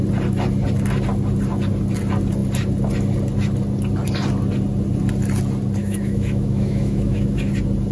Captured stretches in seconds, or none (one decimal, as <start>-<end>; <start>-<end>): 0.0-5.8; 7.5-7.9